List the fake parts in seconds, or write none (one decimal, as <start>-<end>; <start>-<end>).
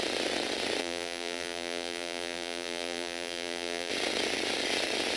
0.8-3.9